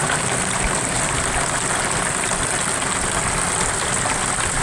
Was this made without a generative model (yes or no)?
yes